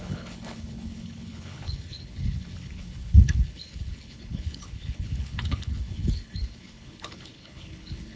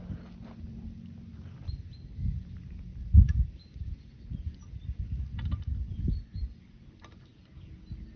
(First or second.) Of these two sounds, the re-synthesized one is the first